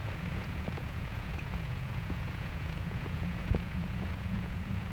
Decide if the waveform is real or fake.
fake